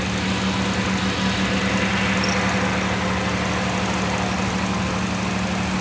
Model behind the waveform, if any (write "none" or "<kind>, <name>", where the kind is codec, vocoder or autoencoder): none